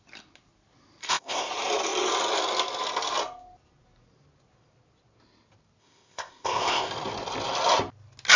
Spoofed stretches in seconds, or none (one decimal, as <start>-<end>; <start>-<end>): 1.0-1.5; 5.8-6.9